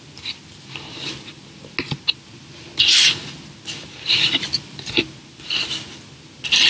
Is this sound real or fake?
real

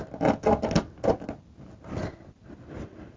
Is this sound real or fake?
real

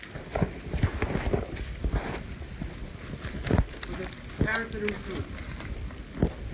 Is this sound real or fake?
real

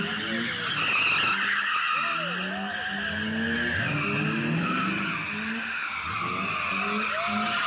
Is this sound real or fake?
real